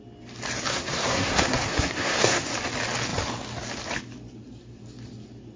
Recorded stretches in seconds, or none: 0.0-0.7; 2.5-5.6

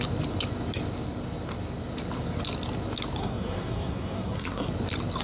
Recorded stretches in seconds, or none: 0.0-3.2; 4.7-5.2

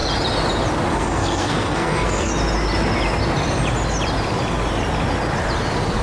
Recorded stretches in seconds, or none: 0.0-0.9; 2.3-6.0